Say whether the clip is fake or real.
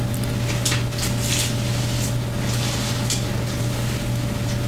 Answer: real